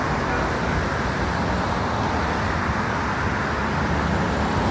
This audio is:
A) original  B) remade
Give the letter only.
A